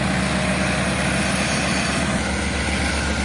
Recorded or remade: recorded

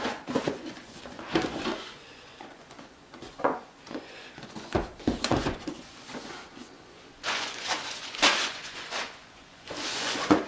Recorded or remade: remade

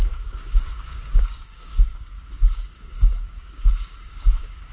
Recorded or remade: remade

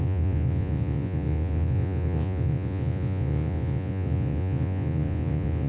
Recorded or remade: remade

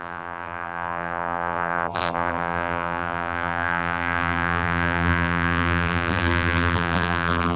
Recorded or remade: remade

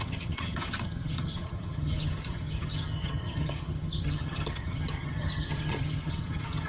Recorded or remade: remade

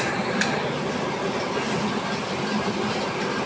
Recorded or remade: recorded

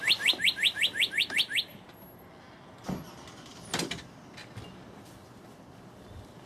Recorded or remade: recorded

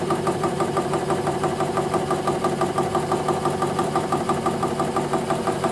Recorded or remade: recorded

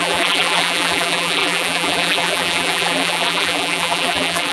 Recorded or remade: remade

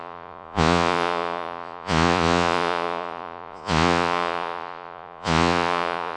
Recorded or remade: remade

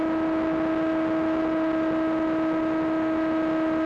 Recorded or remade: recorded